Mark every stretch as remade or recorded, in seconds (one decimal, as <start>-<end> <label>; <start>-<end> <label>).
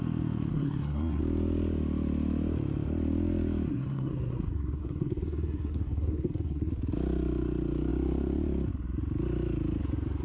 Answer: 0.0-0.5 recorded; 0.5-1.2 remade; 1.2-3.7 recorded; 3.7-6.7 remade; 6.7-10.2 recorded